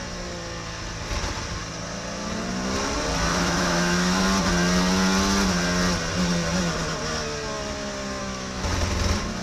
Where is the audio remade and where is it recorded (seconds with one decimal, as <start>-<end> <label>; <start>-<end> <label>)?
0.0-3.3 recorded; 3.3-4.2 remade; 4.2-8.2 recorded; 8.2-8.7 remade; 8.7-9.4 recorded